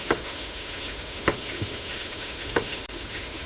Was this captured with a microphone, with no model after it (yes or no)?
no